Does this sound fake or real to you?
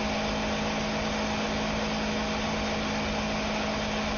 real